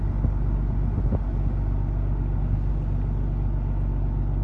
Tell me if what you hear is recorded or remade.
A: recorded